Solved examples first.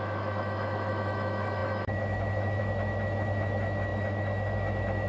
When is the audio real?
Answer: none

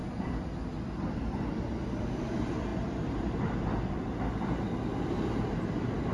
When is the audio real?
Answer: 1.7-6.1

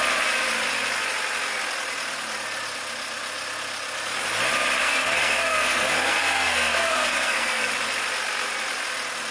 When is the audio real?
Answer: 0.0-4.8; 7.7-9.3

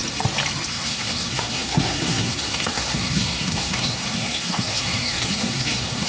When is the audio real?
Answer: 0.0-0.7